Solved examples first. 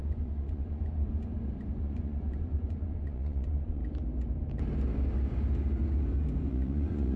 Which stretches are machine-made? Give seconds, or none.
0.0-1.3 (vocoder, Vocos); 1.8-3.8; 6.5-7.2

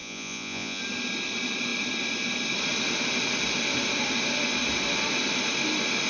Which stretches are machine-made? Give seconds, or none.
0.0-0.8 (vocoder, Vocos)

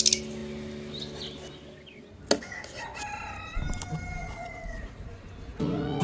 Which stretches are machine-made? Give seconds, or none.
4.2-5.1 (vocoder, Vocos); 5.5-6.0

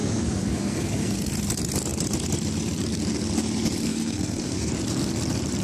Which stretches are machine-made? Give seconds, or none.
0.0-1.3 (codec, SNAC); 3.9-4.7

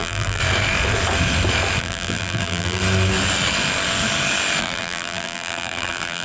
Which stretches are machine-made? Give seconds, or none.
0.0-0.4 (vocoder, BigVGAN v2); 1.8-2.8; 4.6-6.2